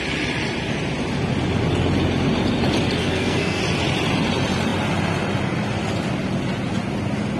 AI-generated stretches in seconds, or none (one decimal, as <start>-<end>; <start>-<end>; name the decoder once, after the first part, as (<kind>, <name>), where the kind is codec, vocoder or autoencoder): 3.0-3.6 (codec, SNAC)